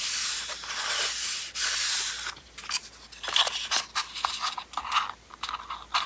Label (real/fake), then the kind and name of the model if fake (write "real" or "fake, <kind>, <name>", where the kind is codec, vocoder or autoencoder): real